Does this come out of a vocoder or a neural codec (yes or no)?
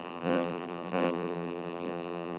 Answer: yes